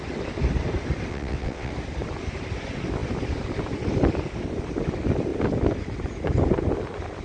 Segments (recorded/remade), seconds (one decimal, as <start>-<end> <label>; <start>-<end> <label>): 0.0-1.1 recorded; 1.1-1.7 remade; 1.7-7.2 recorded